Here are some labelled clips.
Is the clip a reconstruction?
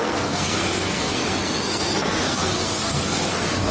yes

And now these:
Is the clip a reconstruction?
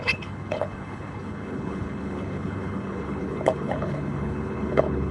yes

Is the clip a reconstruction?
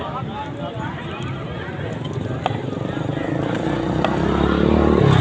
no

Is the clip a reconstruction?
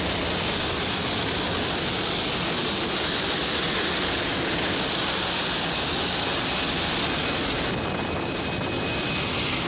no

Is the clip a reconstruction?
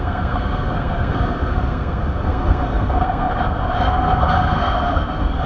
yes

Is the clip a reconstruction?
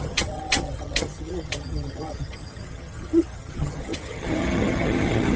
yes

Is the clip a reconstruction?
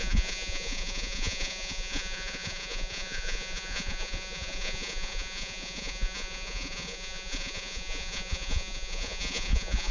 yes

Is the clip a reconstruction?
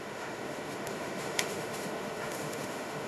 yes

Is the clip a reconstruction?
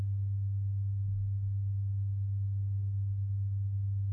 no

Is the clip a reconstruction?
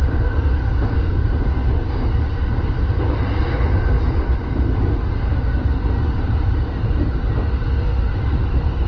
no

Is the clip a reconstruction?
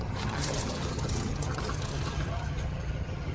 yes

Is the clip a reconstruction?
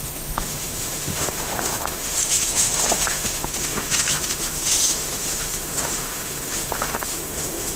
yes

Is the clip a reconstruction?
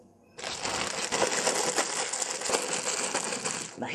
no